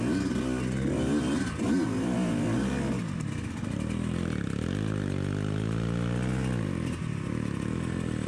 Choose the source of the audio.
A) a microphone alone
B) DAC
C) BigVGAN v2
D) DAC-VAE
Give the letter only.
A